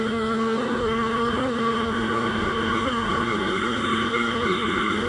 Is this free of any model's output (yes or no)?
no